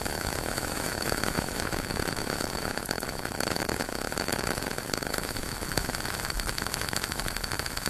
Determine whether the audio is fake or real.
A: fake